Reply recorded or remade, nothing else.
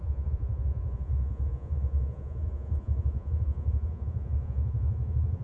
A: remade